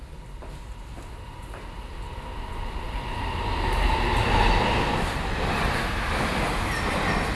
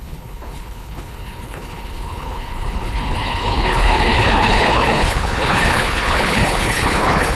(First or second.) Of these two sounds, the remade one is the second